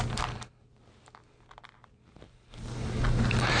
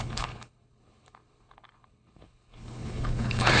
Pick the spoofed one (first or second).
second